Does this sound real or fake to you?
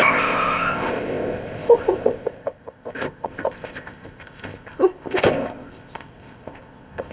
fake